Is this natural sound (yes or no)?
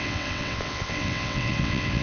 no